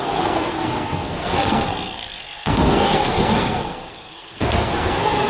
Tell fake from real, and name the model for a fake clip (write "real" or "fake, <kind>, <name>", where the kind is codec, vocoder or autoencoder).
fake, codec, SNAC